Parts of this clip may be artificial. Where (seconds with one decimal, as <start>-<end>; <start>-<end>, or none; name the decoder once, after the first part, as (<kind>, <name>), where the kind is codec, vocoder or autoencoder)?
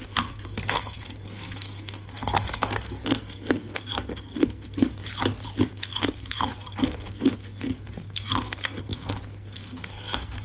0.0-5.0 (codec, SNAC); 5.6-10.4